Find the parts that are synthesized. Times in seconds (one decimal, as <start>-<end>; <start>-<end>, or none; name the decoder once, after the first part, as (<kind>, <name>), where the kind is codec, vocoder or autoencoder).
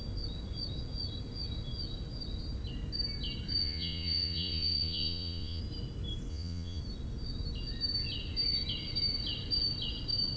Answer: 3.6-5.6 (vocoder, Vocos); 6.3-6.8